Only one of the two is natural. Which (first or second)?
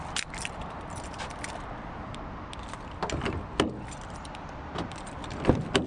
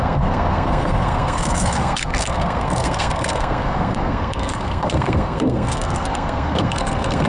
first